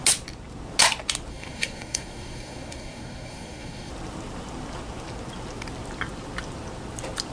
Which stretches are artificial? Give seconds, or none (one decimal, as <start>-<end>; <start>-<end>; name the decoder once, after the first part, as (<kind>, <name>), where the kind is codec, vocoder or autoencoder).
1.3-3.9 (codec, SNAC)